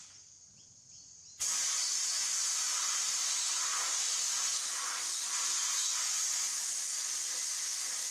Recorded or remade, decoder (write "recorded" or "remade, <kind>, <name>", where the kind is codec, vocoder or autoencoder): recorded